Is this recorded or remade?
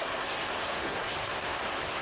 remade